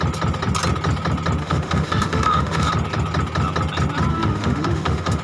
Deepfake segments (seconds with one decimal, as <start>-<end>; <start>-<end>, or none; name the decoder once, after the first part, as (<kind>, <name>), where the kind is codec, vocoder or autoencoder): 1.4-2.7 (autoencoder, DAC-VAE); 4.1-5.2

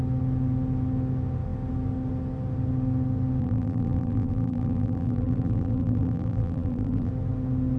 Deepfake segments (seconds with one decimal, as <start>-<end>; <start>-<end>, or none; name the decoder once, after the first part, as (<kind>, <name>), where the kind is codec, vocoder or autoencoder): 3.4-7.1 (vocoder, BigVGAN v2)

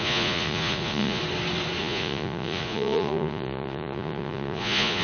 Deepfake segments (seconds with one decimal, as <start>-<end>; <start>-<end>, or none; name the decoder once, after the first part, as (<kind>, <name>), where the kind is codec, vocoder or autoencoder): 0.0-1.2 (vocoder, Vocos); 1.8-5.0

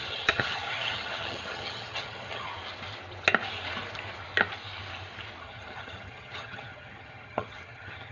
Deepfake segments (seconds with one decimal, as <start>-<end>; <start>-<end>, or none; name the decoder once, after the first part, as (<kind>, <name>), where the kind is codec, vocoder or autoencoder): 0.0-2.5 (vocoder, HiFi-GAN); 5.4-8.1

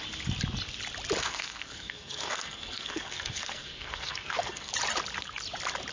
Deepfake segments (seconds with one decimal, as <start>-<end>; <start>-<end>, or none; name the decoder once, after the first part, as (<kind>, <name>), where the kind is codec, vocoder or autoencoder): 1.2-4.7 (codec, SNAC)

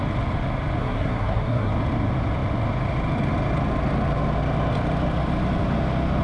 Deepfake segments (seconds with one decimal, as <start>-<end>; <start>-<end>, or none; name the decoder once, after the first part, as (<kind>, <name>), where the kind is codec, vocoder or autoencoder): 0.8-1.7 (codec, SNAC)